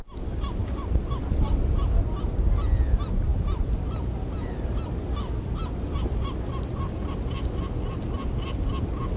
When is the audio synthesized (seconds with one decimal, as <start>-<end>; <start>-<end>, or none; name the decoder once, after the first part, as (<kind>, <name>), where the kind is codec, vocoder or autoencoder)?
none